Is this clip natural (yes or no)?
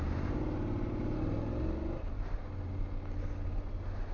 yes